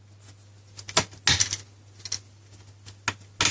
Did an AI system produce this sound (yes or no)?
no